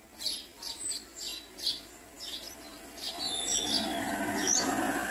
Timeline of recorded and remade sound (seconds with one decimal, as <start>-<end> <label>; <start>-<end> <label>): 0.0-5.1 recorded